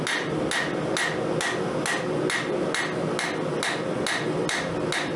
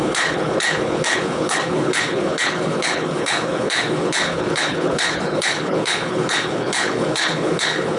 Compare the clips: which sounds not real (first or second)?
second